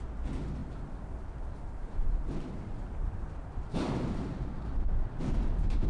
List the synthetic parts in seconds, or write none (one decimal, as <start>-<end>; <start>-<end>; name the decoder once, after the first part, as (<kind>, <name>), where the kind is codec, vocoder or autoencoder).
0.6-3.9 (vocoder, BigVGAN v2)